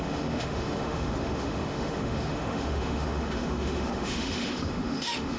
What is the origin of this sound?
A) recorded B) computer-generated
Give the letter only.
B